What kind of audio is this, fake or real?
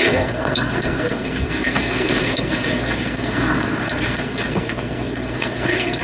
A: fake